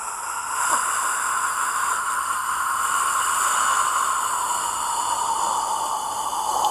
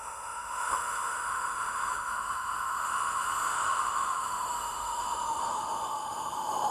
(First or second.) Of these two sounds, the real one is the first